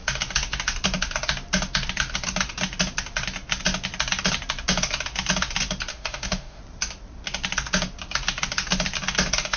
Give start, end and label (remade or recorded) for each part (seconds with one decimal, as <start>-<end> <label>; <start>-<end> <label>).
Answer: 0.0-5.9 recorded; 5.9-6.6 remade; 6.6-9.6 recorded